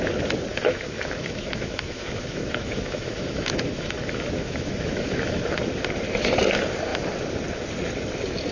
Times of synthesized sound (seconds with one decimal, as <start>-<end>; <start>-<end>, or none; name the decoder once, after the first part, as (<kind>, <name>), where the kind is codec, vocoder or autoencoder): 0.5-5.6 (autoencoder, DAC-VAE)